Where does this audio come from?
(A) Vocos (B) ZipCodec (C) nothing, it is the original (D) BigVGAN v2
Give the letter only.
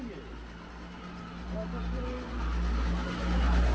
C